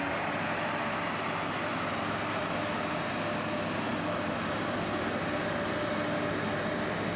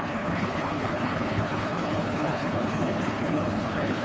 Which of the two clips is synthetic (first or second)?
second